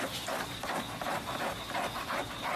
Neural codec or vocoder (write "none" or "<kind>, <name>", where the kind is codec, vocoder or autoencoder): none